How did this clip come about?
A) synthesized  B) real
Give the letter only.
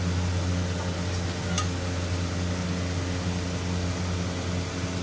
B